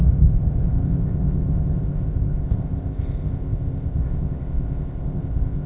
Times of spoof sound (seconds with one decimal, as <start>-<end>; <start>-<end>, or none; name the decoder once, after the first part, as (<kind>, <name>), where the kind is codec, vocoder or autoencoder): 0.0-5.7 (codec, ZipCodec)